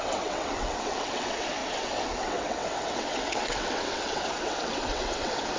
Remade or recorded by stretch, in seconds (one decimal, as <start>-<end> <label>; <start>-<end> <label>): 0.0-5.6 remade